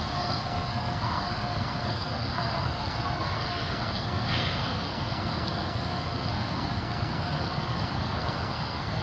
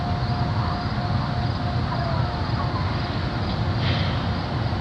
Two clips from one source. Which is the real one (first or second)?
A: second